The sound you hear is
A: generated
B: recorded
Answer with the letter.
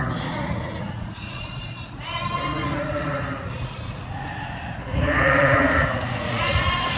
A